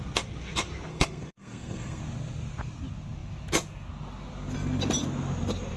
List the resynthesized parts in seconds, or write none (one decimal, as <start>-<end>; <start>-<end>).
0.9-2.0